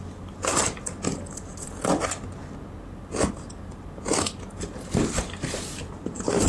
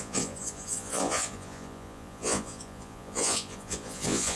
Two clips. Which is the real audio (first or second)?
first